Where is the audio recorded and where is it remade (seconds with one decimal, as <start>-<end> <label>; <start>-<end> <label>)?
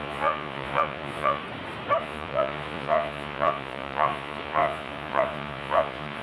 0.0-1.4 remade; 1.4-2.0 recorded; 2.0-6.2 remade